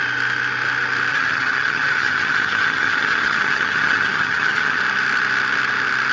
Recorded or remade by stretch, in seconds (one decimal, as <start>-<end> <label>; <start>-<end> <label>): 0.0-1.1 recorded; 1.1-4.8 remade; 4.8-6.1 recorded